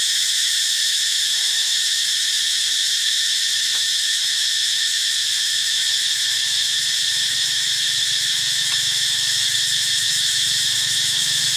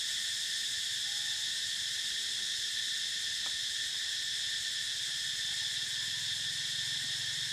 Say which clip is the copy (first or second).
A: first